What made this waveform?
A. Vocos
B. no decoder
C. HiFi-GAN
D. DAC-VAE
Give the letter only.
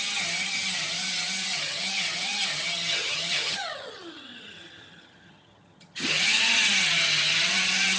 C